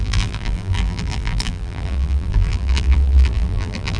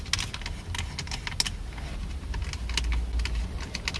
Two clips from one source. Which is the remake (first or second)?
first